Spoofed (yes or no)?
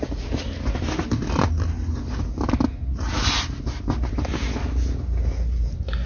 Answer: no